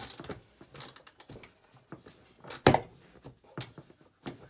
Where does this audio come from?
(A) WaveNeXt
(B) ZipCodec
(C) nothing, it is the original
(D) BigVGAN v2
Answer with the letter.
C